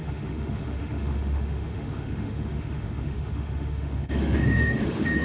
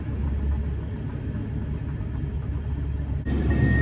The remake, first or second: first